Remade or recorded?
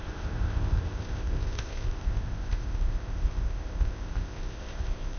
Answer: remade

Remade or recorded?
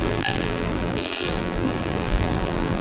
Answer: remade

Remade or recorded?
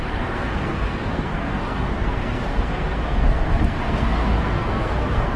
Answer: remade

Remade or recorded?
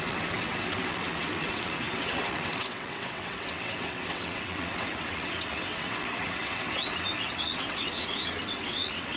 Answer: remade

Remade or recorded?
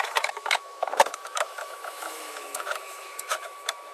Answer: remade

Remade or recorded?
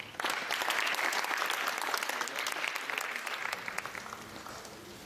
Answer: recorded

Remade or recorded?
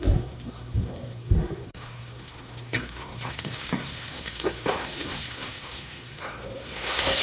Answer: remade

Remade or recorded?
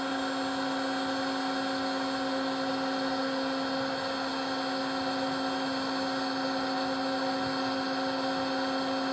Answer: recorded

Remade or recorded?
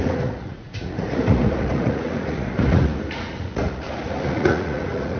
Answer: remade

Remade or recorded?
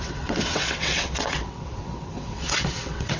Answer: remade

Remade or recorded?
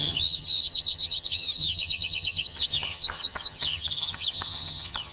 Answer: remade